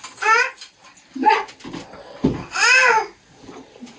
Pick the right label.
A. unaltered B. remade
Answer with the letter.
A